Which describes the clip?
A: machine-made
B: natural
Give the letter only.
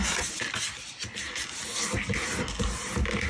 B